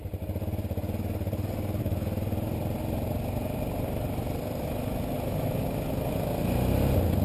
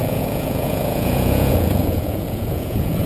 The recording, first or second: first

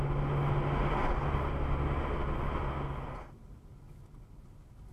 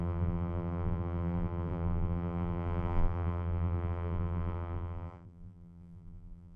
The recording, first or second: first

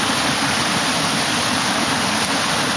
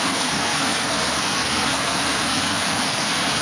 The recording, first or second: first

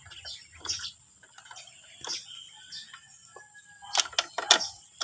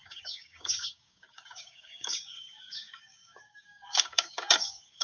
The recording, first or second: first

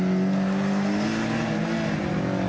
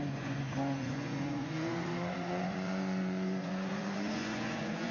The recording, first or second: first